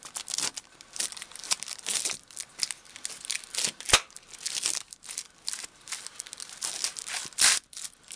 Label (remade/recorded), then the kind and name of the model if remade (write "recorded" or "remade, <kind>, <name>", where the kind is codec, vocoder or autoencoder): recorded